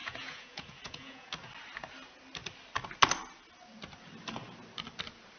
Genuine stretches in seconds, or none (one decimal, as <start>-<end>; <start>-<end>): 1.3-5.4